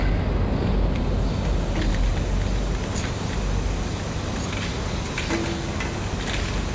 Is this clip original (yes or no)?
yes